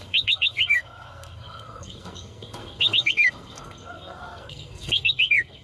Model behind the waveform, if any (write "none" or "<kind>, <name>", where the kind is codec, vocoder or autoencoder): codec, SNAC